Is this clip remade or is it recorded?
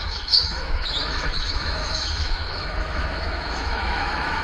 remade